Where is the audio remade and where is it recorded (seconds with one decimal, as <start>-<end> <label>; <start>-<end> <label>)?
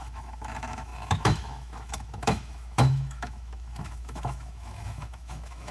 0.0-5.7 remade